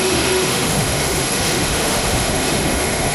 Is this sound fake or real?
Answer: fake